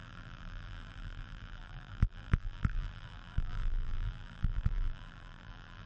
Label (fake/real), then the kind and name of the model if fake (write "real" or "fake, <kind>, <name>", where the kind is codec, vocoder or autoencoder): fake, vocoder, BigVGAN v2